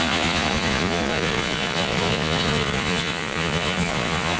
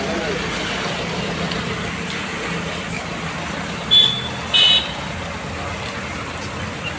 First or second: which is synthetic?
first